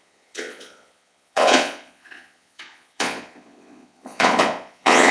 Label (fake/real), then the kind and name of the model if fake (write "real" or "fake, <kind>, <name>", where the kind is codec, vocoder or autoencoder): fake, vocoder, Vocos